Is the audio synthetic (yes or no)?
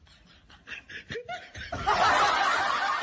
no